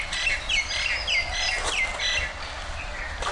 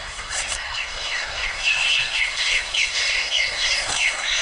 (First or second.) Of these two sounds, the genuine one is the first